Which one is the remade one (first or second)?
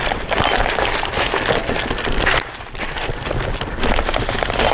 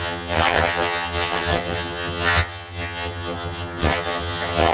second